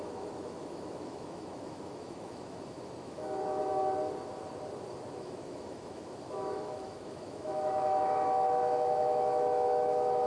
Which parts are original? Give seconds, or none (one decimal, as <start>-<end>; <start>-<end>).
3.6-5.1